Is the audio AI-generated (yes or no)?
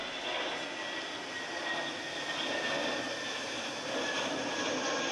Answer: no